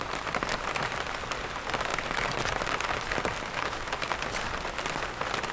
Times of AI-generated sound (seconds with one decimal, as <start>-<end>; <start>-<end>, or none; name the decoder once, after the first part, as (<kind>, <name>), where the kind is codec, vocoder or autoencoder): none